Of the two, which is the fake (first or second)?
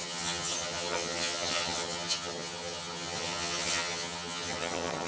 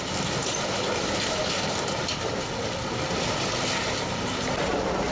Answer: first